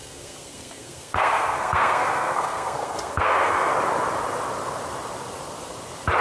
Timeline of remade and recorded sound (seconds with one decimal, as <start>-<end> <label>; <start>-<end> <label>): 0.0-3.7 remade; 3.7-6.2 recorded